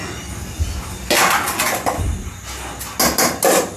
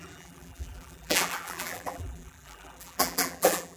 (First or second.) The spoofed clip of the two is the second